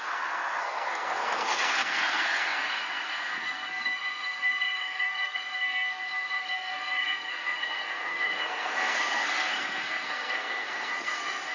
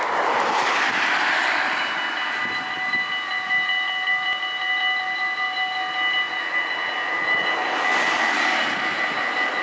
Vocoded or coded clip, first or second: first